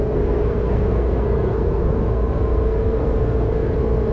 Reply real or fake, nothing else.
fake